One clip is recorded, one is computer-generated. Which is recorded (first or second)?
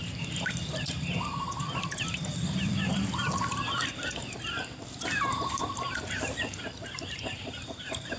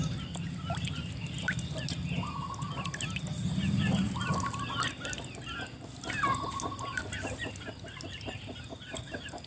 second